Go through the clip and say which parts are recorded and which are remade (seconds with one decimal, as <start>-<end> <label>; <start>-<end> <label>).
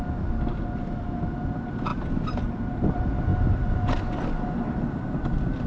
0.0-5.7 recorded